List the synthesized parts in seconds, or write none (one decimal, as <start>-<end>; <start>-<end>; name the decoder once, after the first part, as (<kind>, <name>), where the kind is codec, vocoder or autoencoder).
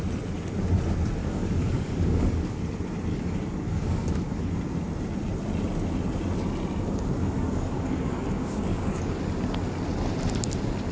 1.2-2.6 (codec, DAC); 3.1-4.5; 7.2-9.1